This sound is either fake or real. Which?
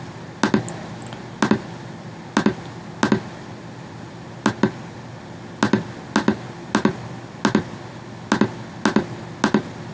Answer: real